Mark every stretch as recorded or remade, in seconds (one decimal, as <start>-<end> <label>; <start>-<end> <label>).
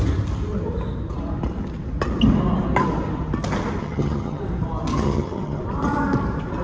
0.0-3.8 recorded; 3.8-4.4 remade; 4.4-4.9 recorded; 4.9-5.6 remade; 5.6-6.6 recorded